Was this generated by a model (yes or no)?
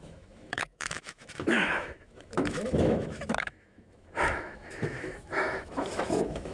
yes